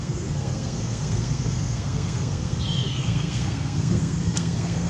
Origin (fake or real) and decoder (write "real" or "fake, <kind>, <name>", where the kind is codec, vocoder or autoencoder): fake, codec, SNAC